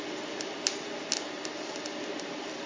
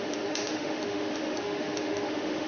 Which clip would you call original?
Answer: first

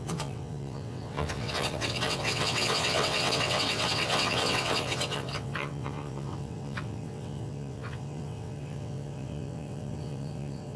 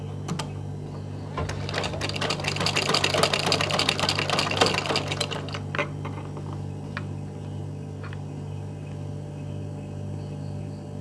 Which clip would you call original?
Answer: second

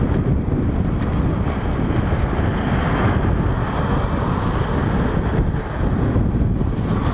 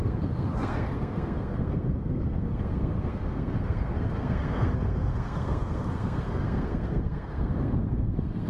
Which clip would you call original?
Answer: first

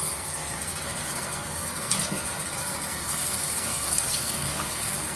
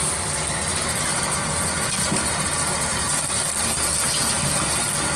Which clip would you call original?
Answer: second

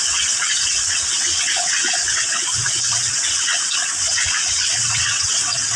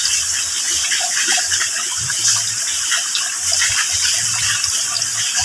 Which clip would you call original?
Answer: second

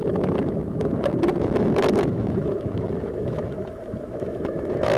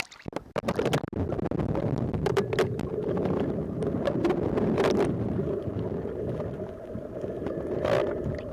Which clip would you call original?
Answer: second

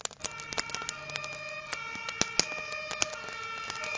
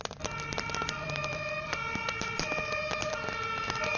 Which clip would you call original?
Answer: first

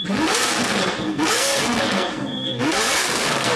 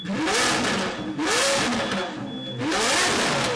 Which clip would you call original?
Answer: second